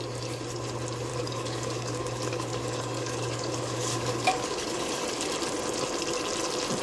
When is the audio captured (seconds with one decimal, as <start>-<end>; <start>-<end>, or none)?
0.0-1.1; 5.0-6.8